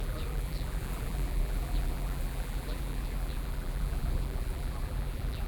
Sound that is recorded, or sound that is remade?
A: remade